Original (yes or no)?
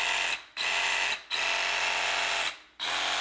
yes